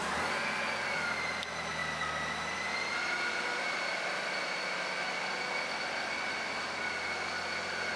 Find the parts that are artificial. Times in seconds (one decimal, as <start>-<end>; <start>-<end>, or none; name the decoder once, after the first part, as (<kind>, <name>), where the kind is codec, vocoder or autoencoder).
none